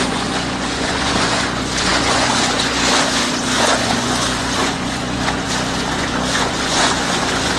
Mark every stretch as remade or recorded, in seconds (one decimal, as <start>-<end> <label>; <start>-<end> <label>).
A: 0.0-7.6 remade